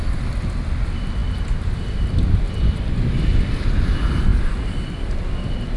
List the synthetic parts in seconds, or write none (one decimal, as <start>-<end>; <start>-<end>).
none